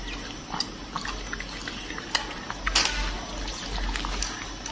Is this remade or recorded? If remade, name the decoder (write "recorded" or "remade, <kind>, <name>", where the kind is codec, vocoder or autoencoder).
recorded